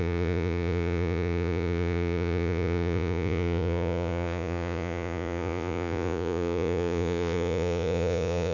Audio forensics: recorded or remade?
remade